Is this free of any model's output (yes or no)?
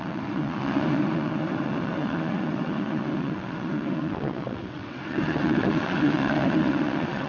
no